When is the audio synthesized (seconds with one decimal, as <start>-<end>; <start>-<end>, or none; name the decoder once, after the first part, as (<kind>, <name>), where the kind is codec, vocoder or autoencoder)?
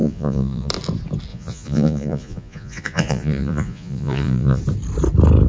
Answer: 0.0-0.7 (vocoder, Vocos); 1.3-4.6